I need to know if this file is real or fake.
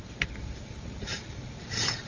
real